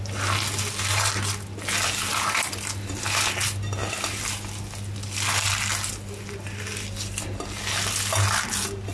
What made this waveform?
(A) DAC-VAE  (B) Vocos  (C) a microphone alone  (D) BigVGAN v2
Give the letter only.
C